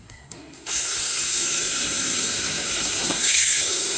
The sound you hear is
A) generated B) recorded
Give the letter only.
A